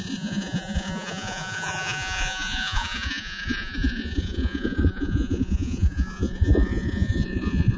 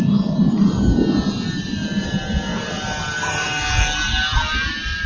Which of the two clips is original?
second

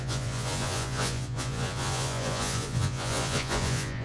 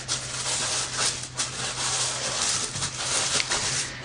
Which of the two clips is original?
second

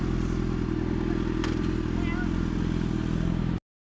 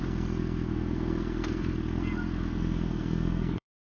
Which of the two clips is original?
first